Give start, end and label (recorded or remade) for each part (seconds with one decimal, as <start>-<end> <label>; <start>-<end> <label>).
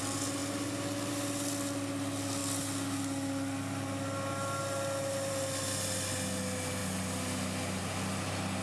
0.0-8.6 recorded